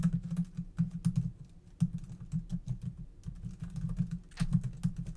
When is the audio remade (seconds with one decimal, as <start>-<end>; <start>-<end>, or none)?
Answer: none